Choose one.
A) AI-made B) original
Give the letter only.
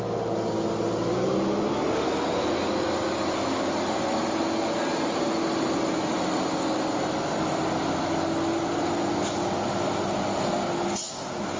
B